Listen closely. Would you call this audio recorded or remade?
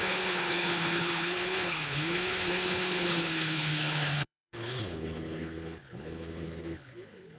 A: remade